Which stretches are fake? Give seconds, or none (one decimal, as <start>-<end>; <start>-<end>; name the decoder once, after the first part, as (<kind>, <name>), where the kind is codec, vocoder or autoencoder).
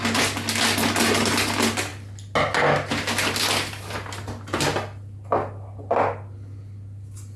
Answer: none